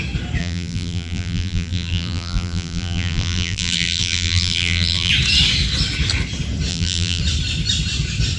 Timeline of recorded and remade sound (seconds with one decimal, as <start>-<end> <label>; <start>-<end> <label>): 0.0-0.4 recorded; 0.4-5.1 remade; 5.1-6.7 recorded; 6.7-7.2 remade; 7.2-8.4 recorded